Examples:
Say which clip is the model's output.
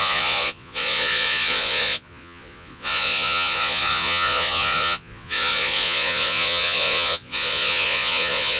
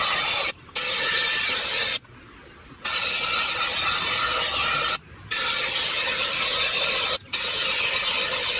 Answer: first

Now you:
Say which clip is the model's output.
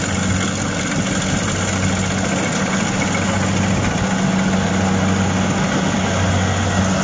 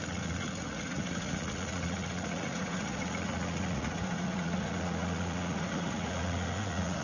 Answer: second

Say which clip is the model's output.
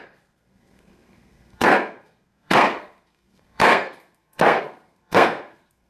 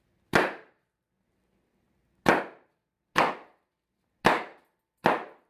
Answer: first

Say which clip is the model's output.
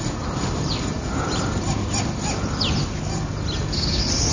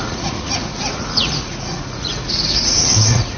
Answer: second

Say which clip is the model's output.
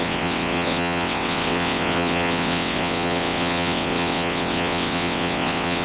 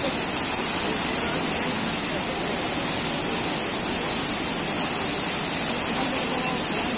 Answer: first